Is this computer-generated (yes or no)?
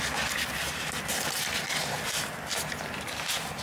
no